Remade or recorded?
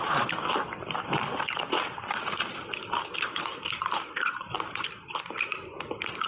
remade